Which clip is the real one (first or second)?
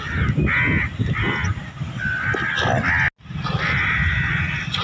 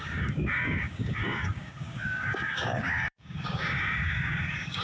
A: first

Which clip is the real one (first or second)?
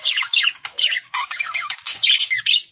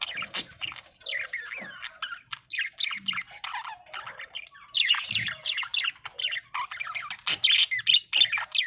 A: second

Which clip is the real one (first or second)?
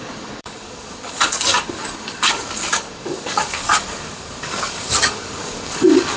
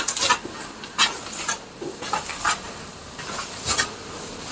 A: second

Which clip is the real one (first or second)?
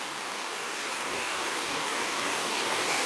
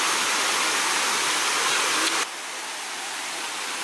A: second